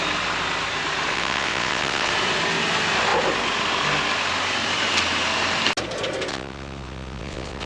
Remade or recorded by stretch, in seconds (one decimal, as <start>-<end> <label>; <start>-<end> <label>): 0.0-1.1 recorded; 1.1-2.1 remade; 2.1-6.3 recorded; 6.3-7.7 remade

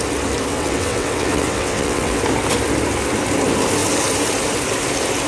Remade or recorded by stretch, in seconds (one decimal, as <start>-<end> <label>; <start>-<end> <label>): 0.0-0.5 recorded; 0.5-2.2 remade; 2.2-5.3 recorded